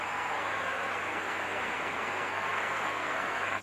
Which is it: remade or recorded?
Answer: remade